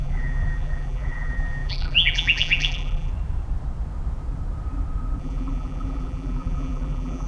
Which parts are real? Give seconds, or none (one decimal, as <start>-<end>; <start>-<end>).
3.1-5.2